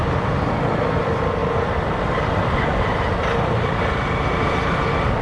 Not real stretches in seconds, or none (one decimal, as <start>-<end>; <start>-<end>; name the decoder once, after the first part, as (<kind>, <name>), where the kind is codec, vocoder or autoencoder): none